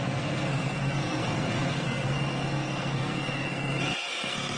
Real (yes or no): no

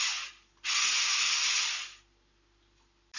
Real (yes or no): yes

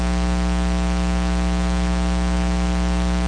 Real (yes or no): yes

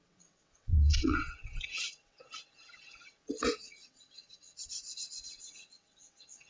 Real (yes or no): no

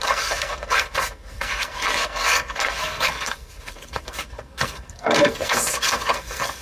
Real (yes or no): no